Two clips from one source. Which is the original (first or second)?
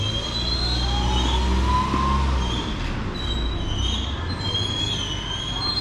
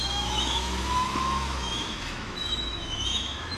first